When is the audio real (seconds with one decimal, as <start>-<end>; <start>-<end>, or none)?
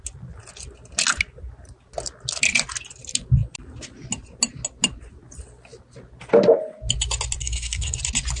0.0-7.4; 8.0-8.4